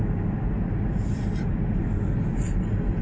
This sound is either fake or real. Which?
real